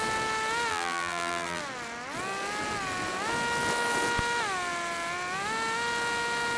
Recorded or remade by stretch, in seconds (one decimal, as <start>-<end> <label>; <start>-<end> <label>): 0.0-0.7 recorded; 0.7-1.6 remade; 1.6-6.6 recorded